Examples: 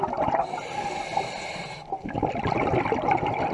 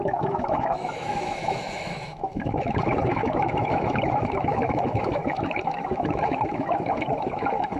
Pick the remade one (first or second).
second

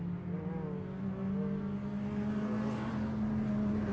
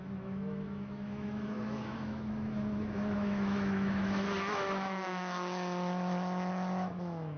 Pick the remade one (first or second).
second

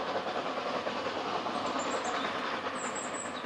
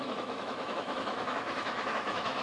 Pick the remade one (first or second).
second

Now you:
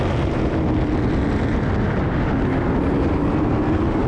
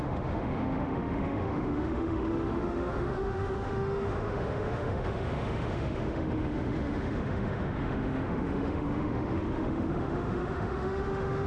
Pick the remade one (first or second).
second